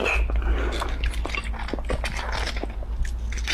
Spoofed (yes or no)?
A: no